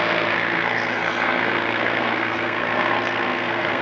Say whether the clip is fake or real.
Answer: fake